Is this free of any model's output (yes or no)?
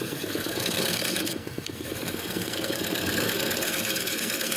no